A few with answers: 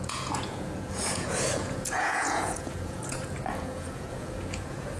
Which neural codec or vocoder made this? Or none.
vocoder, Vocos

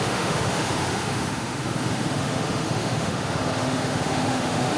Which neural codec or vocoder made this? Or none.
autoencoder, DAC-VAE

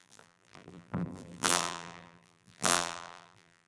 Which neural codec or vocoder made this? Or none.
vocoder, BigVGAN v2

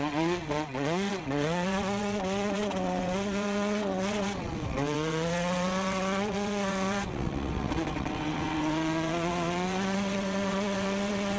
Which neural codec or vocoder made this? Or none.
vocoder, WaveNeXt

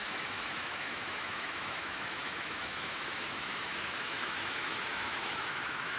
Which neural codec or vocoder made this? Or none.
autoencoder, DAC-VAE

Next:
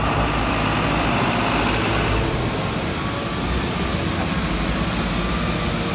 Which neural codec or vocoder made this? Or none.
none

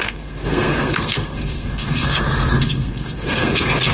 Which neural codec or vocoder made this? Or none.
codec, SNAC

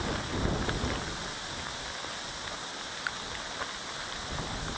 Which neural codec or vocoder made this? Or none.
none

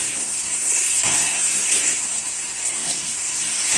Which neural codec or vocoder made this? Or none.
codec, SNAC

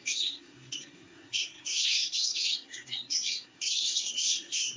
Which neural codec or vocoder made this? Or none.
codec, SNAC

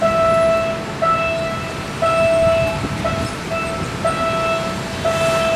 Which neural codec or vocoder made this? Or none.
none